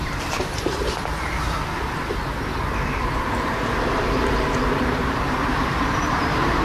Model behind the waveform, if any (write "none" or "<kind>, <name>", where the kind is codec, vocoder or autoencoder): vocoder, BigVGAN v2